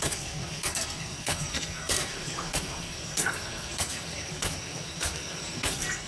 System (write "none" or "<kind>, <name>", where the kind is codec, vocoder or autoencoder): codec, SNAC